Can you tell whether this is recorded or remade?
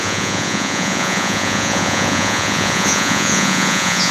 remade